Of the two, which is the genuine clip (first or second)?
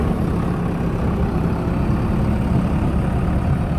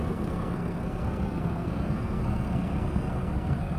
first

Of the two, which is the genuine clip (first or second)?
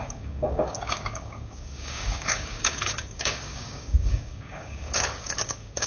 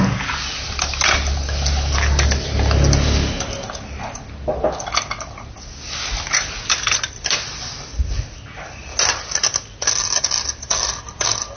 second